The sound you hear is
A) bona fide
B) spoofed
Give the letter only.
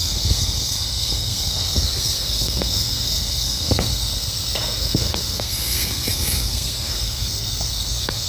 B